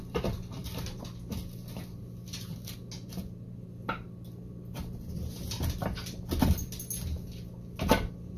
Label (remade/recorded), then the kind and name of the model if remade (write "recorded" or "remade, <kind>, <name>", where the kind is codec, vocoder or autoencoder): recorded